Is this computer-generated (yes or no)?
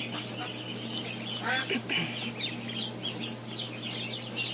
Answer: no